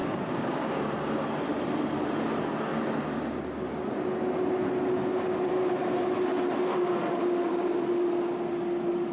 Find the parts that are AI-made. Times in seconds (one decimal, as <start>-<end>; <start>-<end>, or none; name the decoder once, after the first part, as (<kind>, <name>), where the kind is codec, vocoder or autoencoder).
0.0-0.7 (codec, DAC)